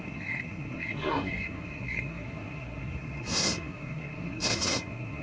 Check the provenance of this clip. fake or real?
fake